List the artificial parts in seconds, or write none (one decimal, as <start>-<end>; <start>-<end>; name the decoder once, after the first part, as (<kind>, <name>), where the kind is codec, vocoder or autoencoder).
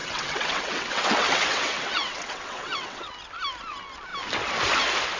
0.0-3.1 (vocoder, WaveNeXt)